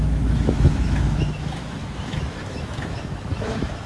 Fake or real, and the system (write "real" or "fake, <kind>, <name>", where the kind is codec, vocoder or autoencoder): fake, autoencoder, DAC-VAE